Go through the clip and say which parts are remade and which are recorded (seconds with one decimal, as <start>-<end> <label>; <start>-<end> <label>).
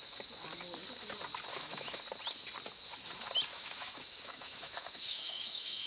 0.0-1.5 recorded; 1.5-2.0 remade; 2.0-3.5 recorded; 3.5-5.9 remade